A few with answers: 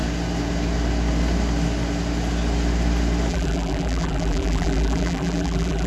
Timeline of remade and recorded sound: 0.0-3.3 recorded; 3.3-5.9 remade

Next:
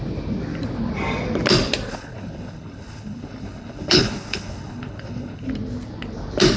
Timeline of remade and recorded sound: 0.0-1.9 recorded; 1.9-5.5 remade; 5.5-6.6 recorded

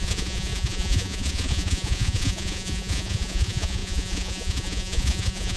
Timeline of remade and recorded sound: 0.0-5.6 remade

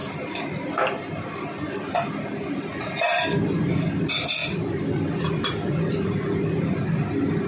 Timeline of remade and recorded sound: 0.0-7.5 recorded

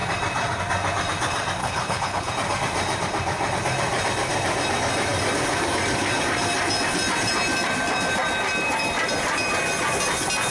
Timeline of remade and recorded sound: 0.0-1.6 recorded; 1.6-2.3 remade; 2.3-10.5 recorded

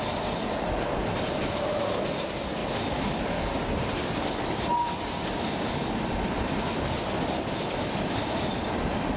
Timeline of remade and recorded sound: 0.0-9.2 recorded